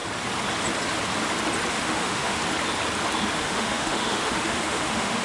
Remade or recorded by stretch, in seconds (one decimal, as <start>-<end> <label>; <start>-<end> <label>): 0.0-1.7 recorded; 1.7-2.4 remade; 2.4-3.4 recorded; 3.4-5.2 remade